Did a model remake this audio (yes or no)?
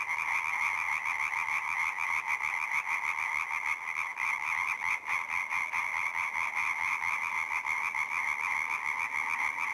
no